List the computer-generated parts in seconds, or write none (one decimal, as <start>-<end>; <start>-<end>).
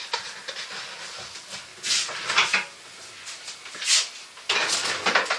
none